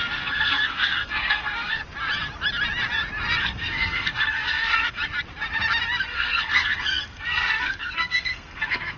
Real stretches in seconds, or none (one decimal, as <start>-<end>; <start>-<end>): 1.8-3.4; 5.0-6.0

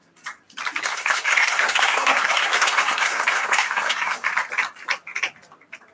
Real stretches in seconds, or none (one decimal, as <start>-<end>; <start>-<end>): 0.0-0.8; 4.3-5.9

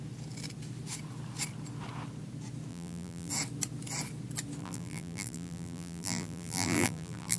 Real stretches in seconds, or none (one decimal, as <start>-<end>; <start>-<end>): 0.0-2.7; 3.3-4.6

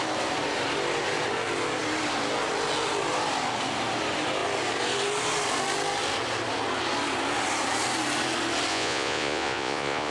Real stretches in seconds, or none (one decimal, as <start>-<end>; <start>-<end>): 0.0-8.7

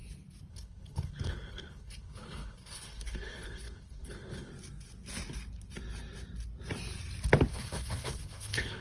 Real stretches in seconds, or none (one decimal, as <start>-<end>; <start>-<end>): 0.0-0.5; 4.5-7.5

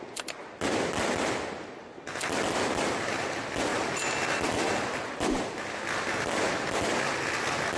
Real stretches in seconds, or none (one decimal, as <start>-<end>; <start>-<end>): 0.0-7.8

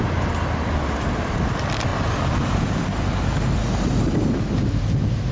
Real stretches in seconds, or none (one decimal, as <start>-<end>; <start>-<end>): 0.0-5.3